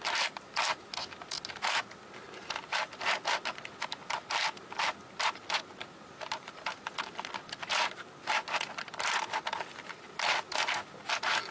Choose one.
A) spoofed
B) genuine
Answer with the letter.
B